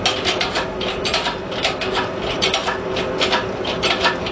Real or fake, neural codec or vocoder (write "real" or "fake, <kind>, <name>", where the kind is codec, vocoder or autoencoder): real